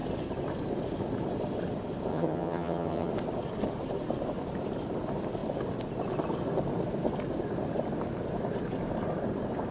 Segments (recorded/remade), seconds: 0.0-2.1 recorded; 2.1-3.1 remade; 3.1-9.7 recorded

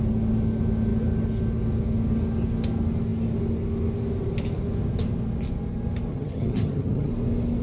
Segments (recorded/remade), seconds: 0.0-6.1 recorded; 6.1-7.1 remade; 7.1-7.6 recorded

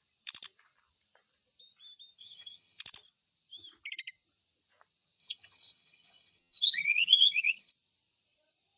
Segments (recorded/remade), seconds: 0.0-2.2 recorded; 2.2-2.8 remade; 2.8-5.2 recorded; 5.2-7.7 remade; 7.7-8.8 recorded